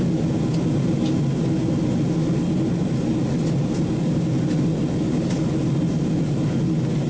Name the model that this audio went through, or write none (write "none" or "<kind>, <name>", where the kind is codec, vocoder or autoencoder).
none